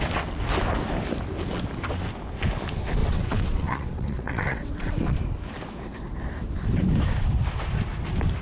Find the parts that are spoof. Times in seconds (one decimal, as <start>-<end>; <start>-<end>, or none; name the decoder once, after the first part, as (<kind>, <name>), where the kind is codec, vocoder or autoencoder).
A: 3.0-5.2 (vocoder, WaveNeXt)